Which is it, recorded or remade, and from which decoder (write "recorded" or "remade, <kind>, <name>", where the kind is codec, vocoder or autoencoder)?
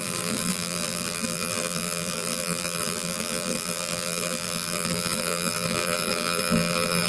remade, vocoder, BigVGAN v2